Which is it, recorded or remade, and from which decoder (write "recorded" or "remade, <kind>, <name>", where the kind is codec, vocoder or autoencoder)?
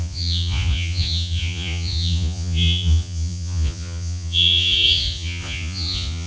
remade, vocoder, Vocos